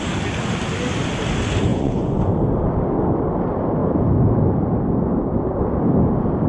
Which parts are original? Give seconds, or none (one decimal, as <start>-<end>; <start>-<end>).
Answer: 0.0-1.7; 2.3-6.5